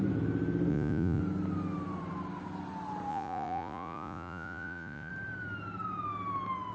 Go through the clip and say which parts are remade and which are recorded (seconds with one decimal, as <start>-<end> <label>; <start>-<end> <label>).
0.0-0.7 recorded; 0.7-1.2 remade; 1.2-3.1 recorded; 3.1-5.1 remade; 5.1-6.7 recorded